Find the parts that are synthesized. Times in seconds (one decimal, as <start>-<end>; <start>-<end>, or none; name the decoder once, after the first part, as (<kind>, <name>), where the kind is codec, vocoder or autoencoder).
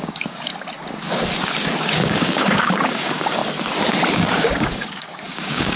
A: 0.0-0.5 (codec, DAC); 1.8-3.4; 4.1-5.8